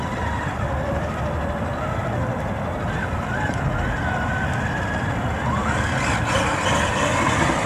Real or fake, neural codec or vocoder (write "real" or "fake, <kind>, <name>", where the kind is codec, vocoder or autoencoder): real